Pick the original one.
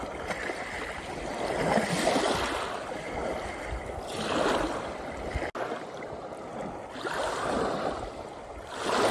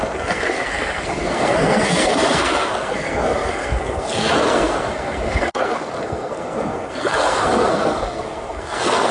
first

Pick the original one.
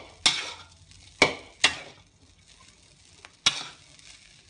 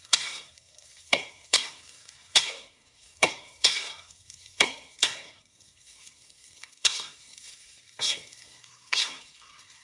first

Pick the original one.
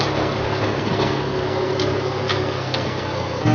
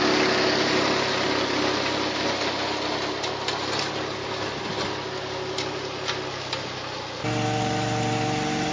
second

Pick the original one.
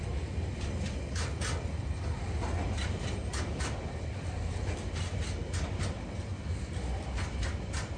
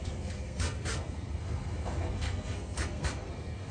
first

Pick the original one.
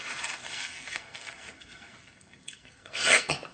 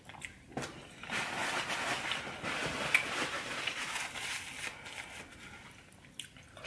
second